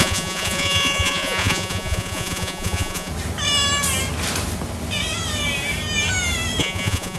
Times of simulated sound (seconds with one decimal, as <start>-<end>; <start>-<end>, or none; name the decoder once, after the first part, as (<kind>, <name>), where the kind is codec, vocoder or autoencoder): 0.0-3.1 (vocoder, Vocos); 6.6-7.2